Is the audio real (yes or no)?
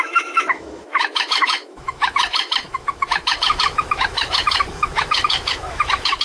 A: no